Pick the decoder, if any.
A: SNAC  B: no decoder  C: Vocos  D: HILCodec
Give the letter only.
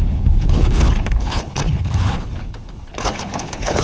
D